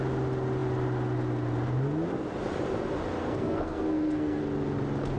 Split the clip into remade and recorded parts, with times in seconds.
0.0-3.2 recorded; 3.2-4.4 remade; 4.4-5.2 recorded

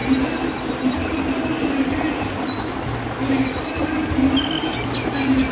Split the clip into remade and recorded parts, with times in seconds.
0.0-5.5 recorded

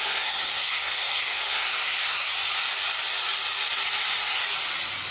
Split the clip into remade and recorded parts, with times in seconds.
0.0-2.3 remade; 2.3-5.1 recorded

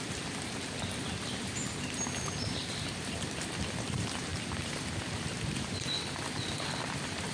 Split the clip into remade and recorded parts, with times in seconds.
0.0-7.3 recorded

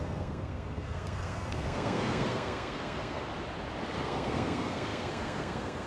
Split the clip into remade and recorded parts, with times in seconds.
0.0-3.3 remade; 3.3-4.0 recorded; 4.0-5.9 remade

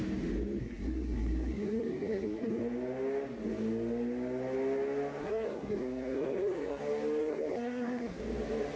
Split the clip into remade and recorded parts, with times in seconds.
0.0-0.6 recorded; 0.6-2.6 remade; 2.6-5.2 recorded; 5.2-6.8 remade; 6.8-7.2 recorded; 7.2-8.2 remade; 8.2-8.8 recorded